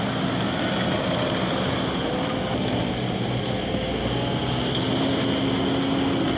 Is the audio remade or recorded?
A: recorded